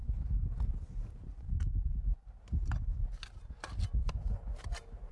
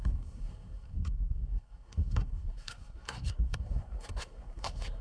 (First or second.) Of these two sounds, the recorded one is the first